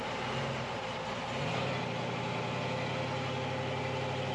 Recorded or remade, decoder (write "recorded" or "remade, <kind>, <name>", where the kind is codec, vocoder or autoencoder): recorded